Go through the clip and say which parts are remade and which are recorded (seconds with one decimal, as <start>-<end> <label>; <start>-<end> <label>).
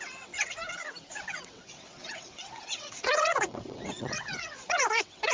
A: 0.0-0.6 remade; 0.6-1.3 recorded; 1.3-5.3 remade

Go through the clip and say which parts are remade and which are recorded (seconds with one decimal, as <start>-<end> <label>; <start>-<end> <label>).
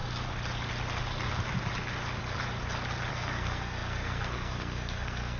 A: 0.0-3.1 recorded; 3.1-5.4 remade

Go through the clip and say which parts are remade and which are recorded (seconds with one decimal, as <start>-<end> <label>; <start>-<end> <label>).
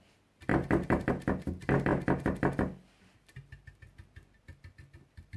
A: 0.0-5.4 recorded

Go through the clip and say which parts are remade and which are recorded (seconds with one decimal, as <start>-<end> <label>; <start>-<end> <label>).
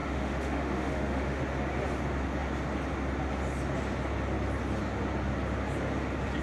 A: 0.0-1.4 remade; 1.4-6.4 recorded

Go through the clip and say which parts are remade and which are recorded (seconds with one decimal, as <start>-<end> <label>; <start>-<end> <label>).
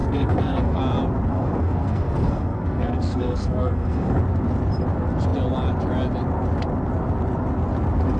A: 0.0-0.8 remade; 0.8-1.3 recorded; 1.3-4.2 remade; 4.2-8.2 recorded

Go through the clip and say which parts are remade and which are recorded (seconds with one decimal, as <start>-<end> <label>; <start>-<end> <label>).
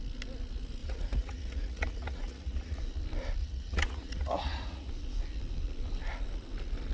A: 0.0-0.8 recorded; 0.8-2.8 remade; 2.8-3.4 recorded; 3.4-4.9 remade; 4.9-6.9 recorded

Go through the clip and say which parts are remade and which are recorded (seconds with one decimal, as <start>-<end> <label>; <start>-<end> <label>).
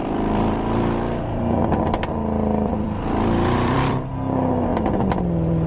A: 0.0-0.6 remade; 0.6-1.3 recorded; 1.3-4.1 remade; 4.1-5.7 recorded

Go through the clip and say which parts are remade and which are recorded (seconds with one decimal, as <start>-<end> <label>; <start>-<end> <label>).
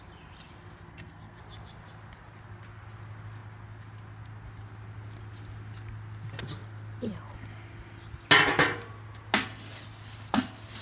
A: 0.0-0.9 recorded; 0.9-1.4 remade; 1.4-10.8 recorded